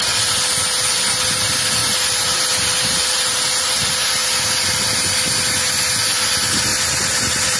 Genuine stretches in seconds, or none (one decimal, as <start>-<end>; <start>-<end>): 0.0-1.8; 3.9-6.7